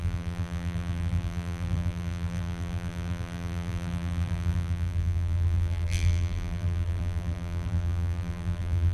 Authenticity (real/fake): fake